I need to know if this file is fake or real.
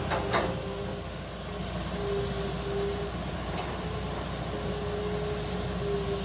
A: real